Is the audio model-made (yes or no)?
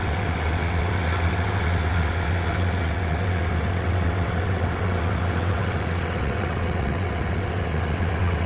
yes